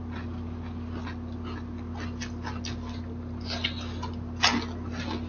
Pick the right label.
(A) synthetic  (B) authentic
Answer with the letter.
B